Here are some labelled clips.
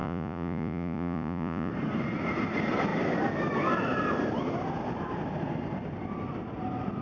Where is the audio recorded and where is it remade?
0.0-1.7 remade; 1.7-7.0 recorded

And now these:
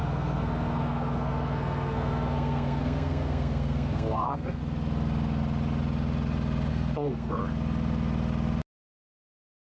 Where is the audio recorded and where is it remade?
0.0-4.6 remade; 4.6-6.7 recorded; 6.7-7.4 remade; 7.4-9.7 recorded

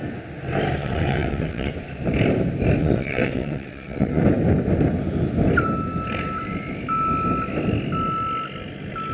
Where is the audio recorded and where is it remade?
0.0-0.8 recorded; 0.8-1.7 remade; 1.7-2.8 recorded; 2.8-4.2 remade; 4.2-9.1 recorded

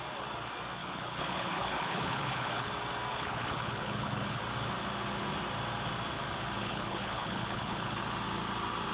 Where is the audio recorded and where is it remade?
0.0-0.8 recorded; 0.8-2.7 remade; 2.7-3.1 recorded; 3.1-4.4 remade; 4.4-6.6 recorded; 6.6-8.0 remade; 8.0-8.9 recorded

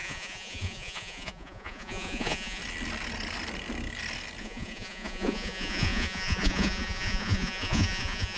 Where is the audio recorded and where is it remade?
0.0-2.6 remade; 2.6-4.4 recorded; 4.4-8.4 remade